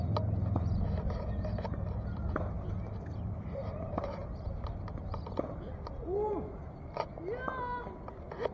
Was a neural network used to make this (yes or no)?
no